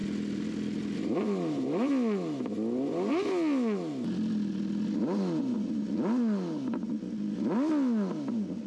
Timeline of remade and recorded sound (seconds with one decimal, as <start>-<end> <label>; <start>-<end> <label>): 0.0-8.7 recorded